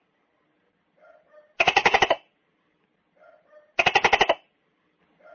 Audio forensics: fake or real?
real